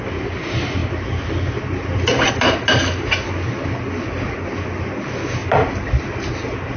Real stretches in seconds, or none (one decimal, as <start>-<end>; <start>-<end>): 0.0-6.8